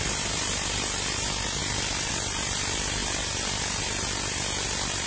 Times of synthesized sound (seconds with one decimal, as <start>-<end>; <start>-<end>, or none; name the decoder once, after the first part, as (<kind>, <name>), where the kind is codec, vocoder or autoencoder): none